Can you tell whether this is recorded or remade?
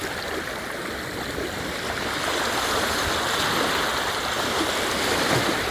recorded